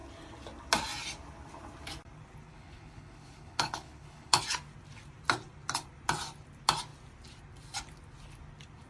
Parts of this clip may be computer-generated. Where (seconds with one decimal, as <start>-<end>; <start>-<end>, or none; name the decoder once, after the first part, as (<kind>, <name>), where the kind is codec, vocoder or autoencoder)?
2.5-4.4 (codec, HILCodec)